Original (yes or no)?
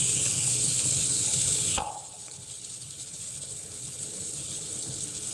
no